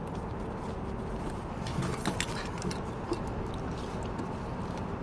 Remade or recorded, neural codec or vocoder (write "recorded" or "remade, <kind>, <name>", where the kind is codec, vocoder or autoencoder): recorded